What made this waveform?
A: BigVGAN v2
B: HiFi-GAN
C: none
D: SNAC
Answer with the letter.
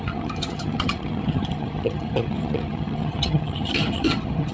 B